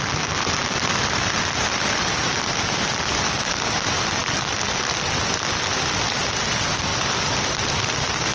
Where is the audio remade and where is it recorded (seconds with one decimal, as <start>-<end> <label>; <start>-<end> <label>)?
0.0-0.6 recorded; 0.6-2.3 remade; 2.3-6.9 recorded; 6.9-7.8 remade; 7.8-8.3 recorded